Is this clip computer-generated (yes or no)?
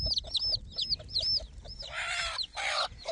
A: no